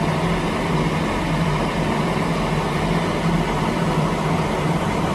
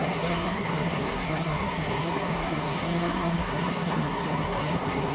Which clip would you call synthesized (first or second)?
second